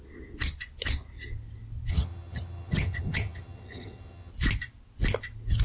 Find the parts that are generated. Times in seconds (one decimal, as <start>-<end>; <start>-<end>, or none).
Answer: 1.9-4.3